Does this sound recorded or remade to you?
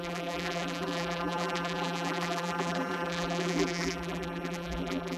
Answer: remade